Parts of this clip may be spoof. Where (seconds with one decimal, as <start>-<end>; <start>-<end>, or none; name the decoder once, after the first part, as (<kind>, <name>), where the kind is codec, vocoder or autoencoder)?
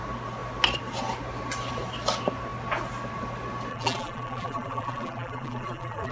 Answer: 3.7-6.1 (vocoder, BigVGAN v2)